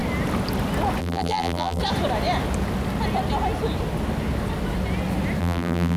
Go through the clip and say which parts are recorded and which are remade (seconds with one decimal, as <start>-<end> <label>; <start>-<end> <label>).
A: 0.0-1.0 recorded; 1.0-1.8 remade; 1.8-5.4 recorded; 5.4-6.0 remade